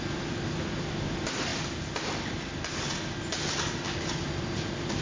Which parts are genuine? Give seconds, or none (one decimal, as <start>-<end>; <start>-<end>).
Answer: 0.0-5.0